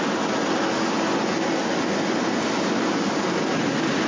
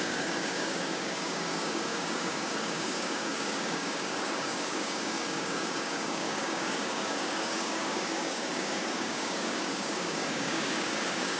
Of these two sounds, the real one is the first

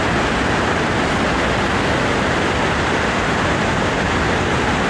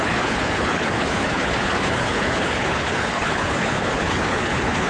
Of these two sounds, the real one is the first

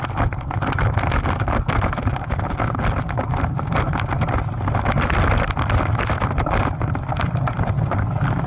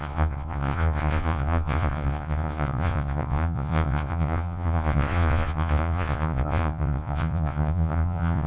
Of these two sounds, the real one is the first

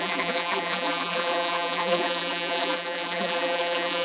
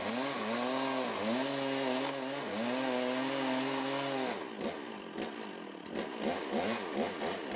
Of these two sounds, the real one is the second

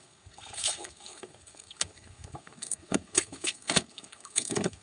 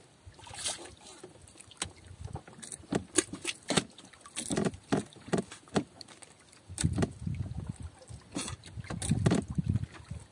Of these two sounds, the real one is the second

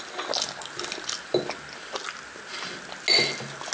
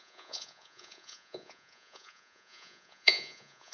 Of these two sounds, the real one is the first